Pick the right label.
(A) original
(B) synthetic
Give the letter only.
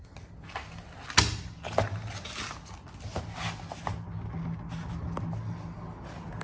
A